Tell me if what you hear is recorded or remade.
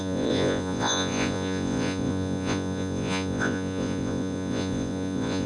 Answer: remade